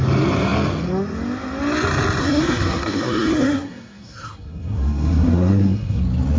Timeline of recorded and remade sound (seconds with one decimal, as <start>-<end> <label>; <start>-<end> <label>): 0.0-2.2 recorded; 2.2-6.0 remade; 6.0-6.4 recorded